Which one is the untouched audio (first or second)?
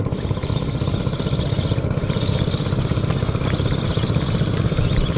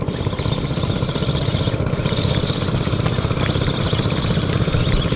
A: first